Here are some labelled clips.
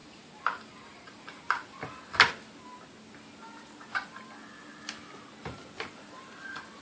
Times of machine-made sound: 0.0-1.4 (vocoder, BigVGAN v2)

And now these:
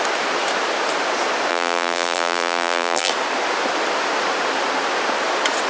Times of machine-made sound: 1.5-3.1 (vocoder, BigVGAN v2)

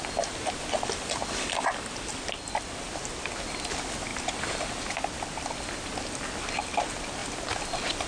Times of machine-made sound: none

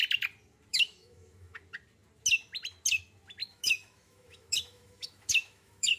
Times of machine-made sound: 0.7-1.6 (autoencoder, DAC-VAE); 3.4-6.0